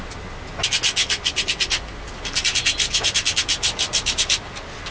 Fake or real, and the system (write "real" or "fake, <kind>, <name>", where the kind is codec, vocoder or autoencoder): real